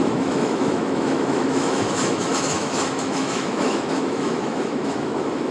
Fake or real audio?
fake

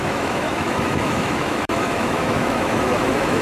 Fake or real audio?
fake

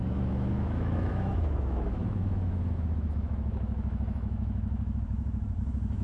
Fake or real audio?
fake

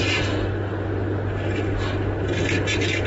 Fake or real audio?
real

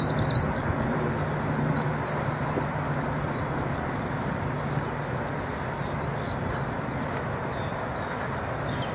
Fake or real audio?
real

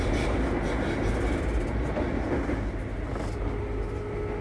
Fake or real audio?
real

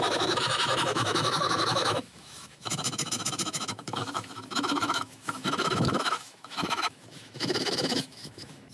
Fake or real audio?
fake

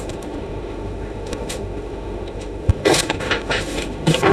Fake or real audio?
fake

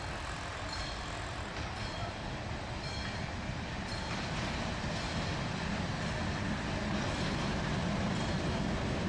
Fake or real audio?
real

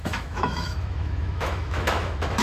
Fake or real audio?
fake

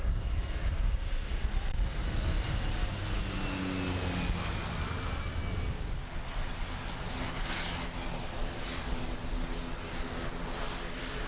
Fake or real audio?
real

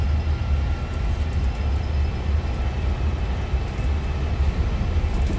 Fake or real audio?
real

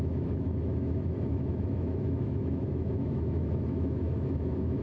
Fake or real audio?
fake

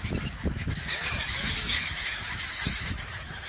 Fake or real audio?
fake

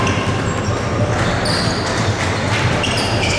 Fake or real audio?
real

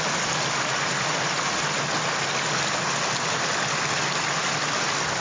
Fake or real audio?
real